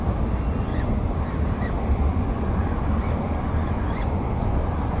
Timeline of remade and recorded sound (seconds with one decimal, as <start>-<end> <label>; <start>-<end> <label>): 0.0-0.7 recorded; 0.7-1.2 remade; 1.2-2.1 recorded; 2.1-5.0 remade